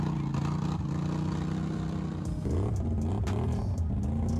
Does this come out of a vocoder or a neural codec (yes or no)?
no